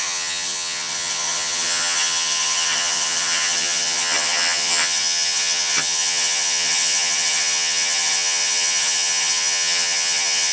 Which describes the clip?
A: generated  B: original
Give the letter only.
A